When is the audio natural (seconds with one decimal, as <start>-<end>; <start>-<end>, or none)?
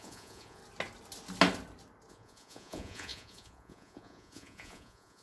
0.6-2.1